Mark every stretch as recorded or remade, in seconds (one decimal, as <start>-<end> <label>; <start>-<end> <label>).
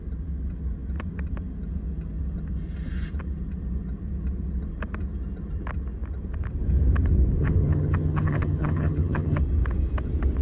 0.0-7.4 recorded; 7.4-9.4 remade; 9.4-10.4 recorded